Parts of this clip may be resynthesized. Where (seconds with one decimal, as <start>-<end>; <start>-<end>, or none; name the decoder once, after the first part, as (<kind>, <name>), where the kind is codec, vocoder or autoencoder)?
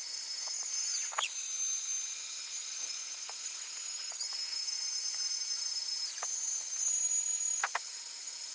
0.0-0.9 (vocoder, Vocos); 2.6-8.5